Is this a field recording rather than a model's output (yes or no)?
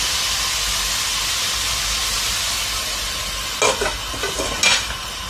yes